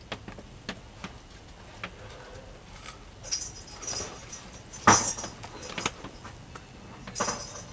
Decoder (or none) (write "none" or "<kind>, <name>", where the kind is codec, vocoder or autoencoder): none